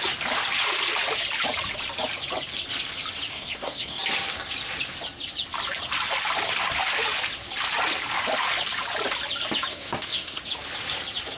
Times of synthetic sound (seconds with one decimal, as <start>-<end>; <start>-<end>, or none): 3.3-4.0; 9.7-10.4